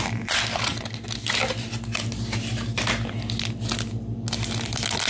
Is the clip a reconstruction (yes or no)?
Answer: no